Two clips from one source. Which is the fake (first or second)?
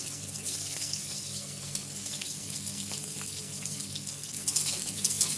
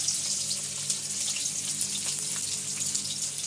first